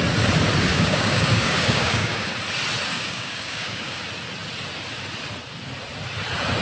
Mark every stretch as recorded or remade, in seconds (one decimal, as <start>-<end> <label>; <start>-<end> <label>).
0.0-0.7 recorded; 0.7-2.3 remade; 2.3-2.9 recorded; 2.9-4.0 remade; 4.0-6.6 recorded